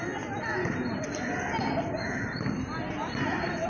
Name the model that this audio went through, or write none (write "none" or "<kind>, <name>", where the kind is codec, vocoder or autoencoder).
none